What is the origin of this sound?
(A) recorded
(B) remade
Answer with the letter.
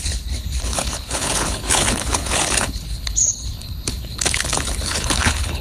B